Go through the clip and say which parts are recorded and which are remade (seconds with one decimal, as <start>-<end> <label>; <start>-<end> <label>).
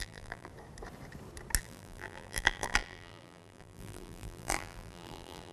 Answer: 0.0-0.5 remade; 0.5-1.6 recorded; 1.6-5.5 remade